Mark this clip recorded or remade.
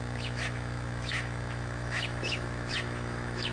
remade